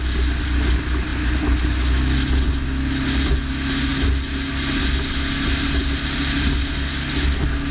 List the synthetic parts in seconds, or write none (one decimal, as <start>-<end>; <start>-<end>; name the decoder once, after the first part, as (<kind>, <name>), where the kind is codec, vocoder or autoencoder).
none